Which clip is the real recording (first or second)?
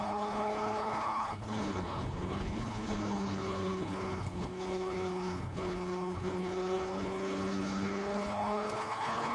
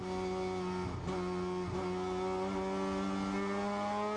second